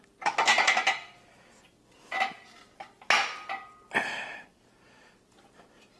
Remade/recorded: recorded